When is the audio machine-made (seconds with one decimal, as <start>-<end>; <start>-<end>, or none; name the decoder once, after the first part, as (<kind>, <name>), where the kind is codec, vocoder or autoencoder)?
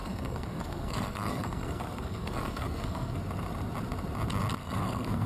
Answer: 0.0-3.2 (codec, SNAC); 4.6-5.3